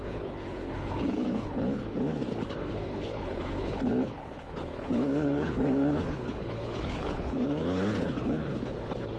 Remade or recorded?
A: remade